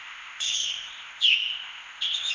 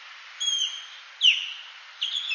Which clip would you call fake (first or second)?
first